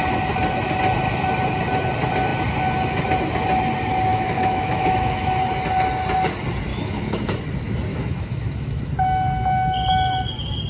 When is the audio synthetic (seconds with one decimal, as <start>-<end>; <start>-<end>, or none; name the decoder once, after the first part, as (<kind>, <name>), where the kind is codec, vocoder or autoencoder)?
4.1-5.4 (autoencoder, DAC-VAE); 6.7-7.4; 7.9-8.9